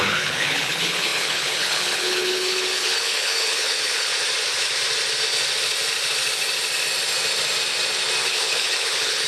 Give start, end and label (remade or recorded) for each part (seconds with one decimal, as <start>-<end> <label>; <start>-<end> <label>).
0.0-4.1 remade; 4.1-8.2 recorded; 8.2-9.3 remade